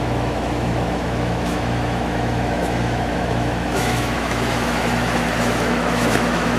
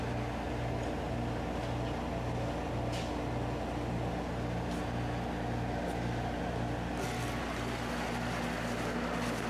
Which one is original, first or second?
second